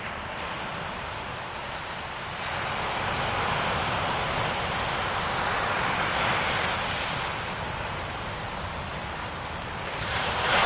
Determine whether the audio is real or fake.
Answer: real